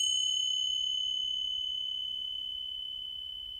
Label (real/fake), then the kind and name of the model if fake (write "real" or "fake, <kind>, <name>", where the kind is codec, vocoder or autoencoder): real